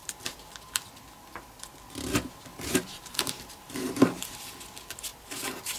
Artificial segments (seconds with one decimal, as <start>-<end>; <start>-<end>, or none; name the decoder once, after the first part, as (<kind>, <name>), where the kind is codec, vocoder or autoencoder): 2.5-4.4 (vocoder, BigVGAN v2); 5.1-5.8

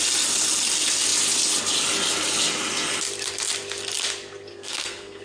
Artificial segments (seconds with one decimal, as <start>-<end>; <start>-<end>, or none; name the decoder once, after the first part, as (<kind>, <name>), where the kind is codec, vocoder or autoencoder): 4.5-5.2 (codec, SNAC)

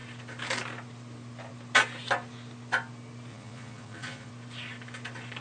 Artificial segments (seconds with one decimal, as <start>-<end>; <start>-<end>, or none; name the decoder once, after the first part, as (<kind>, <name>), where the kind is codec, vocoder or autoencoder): 3.3-4.3 (vocoder, Vocos)

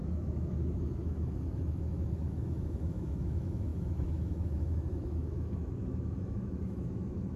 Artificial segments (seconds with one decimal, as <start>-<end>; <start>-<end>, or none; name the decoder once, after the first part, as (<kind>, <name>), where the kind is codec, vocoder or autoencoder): 0.0-7.4 (autoencoder, DAC-VAE)

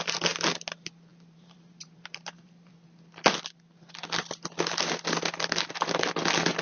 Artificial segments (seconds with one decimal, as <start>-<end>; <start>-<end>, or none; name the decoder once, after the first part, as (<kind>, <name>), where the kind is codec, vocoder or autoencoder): 1.1-2.7 (vocoder, BigVGAN v2)

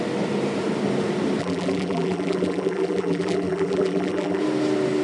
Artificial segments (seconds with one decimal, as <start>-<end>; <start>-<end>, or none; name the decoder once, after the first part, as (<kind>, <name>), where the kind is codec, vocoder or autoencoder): 1.4-4.4 (vocoder, BigVGAN v2)

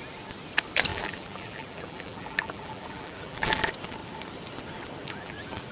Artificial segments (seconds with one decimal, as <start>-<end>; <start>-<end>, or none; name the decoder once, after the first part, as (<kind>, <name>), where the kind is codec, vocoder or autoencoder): 0.9-3.6 (vocoder, BigVGAN v2); 5.0-5.7